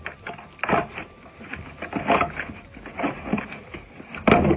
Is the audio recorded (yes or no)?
yes